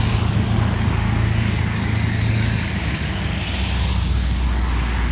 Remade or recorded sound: remade